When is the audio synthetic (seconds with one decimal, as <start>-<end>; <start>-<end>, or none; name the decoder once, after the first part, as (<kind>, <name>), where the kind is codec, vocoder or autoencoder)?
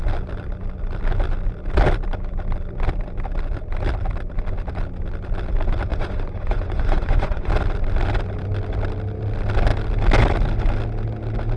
5.9-7.5 (vocoder, Vocos)